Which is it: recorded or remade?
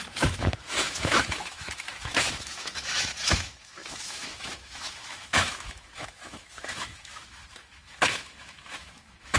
remade